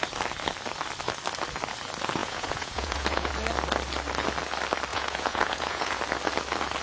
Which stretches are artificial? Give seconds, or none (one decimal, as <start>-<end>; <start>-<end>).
2.2-3.3; 4.9-6.0